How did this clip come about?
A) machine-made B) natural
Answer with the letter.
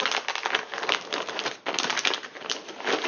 B